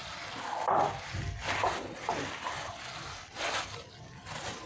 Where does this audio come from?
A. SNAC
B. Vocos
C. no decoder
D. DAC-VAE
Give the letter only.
C